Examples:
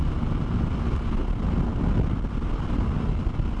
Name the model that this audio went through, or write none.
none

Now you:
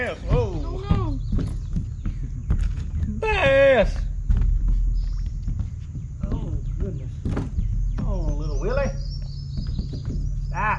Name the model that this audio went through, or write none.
none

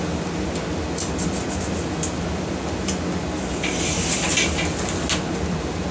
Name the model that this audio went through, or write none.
none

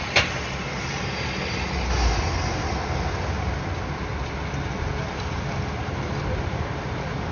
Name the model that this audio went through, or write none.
none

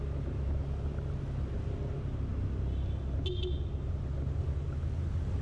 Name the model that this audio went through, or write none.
none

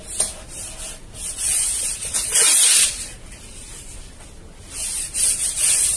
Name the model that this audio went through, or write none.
none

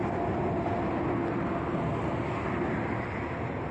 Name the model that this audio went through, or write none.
none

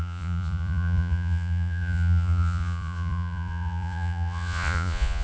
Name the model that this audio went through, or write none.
vocoder, Vocos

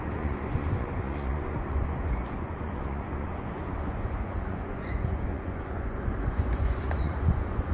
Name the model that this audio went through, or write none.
vocoder, Vocos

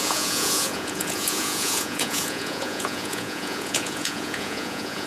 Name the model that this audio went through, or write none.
vocoder, Vocos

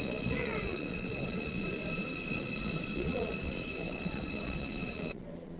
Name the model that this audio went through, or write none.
vocoder, Vocos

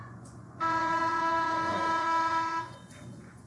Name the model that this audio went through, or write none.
vocoder, Vocos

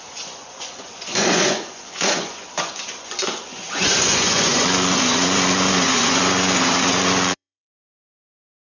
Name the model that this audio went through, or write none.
vocoder, Vocos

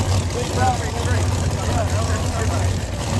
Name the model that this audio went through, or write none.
none